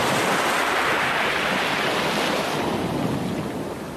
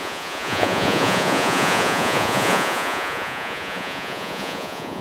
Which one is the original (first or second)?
first